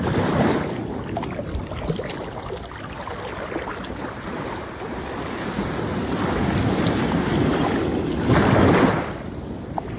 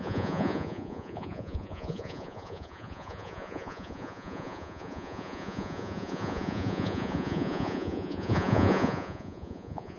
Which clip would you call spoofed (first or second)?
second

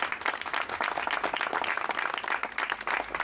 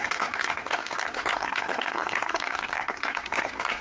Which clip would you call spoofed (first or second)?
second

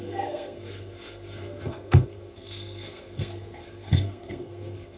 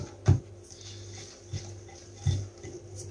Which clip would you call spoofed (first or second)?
first